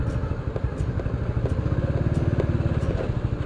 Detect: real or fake real